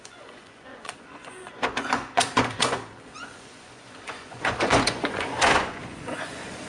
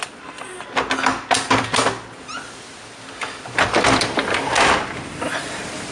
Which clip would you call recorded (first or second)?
second